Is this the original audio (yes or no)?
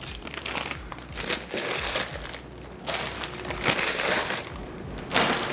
yes